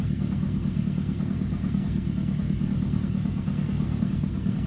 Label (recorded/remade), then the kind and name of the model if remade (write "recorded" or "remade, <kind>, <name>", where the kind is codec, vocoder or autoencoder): remade, codec, SNAC